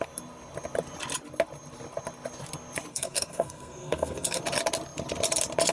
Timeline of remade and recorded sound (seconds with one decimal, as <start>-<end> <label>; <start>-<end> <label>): 0.0-2.9 recorded; 2.9-4.4 remade; 4.4-5.7 recorded